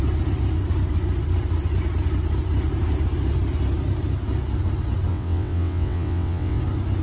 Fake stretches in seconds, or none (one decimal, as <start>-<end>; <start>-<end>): 5.1-6.6